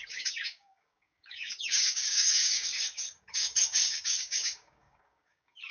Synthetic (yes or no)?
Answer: yes